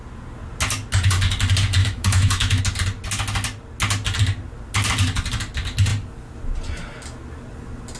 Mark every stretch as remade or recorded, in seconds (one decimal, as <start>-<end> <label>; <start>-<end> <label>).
0.0-1.8 recorded; 1.8-2.6 remade; 2.6-8.0 recorded